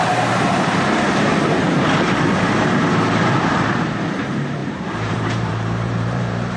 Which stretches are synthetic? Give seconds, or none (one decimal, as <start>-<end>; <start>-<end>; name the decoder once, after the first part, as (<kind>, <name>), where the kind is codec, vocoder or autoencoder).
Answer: 0.0-1.5 (vocoder, BigVGAN v2); 2.3-6.6